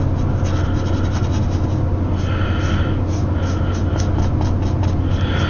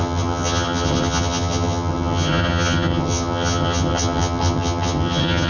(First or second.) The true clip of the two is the first